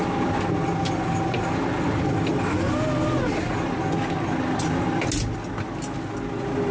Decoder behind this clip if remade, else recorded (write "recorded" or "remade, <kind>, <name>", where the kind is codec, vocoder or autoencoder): recorded